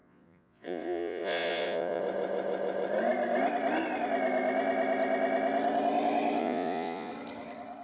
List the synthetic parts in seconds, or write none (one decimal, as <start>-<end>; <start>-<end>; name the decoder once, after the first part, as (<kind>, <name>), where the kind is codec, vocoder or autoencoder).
0.0-2.0 (vocoder, Vocos); 6.4-7.1